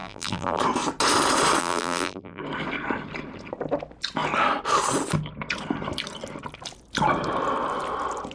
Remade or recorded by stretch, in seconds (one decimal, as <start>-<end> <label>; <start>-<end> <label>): 0.0-0.6 remade; 0.6-1.6 recorded; 1.6-2.4 remade; 2.4-8.3 recorded